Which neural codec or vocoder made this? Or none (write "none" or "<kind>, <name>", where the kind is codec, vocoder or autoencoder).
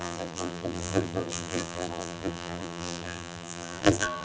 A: vocoder, BigVGAN v2